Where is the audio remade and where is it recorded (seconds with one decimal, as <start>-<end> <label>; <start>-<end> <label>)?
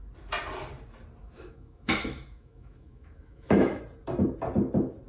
0.0-1.2 recorded; 1.2-3.8 remade; 3.8-5.1 recorded